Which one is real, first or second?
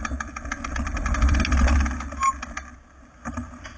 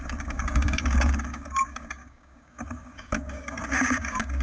first